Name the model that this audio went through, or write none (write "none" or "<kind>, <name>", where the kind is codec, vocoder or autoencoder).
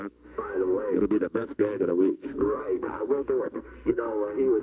codec, SNAC